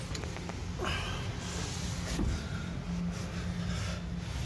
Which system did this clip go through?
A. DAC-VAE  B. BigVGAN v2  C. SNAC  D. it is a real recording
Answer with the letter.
D